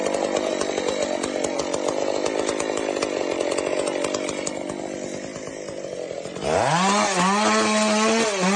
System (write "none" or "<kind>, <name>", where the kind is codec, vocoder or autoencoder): none